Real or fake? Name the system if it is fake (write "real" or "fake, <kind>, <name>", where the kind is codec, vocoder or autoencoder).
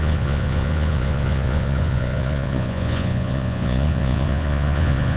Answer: fake, vocoder, Vocos